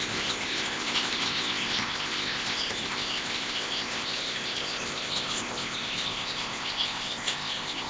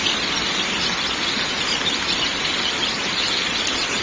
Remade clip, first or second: first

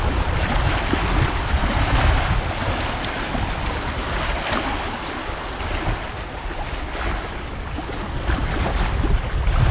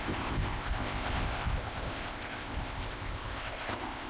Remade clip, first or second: second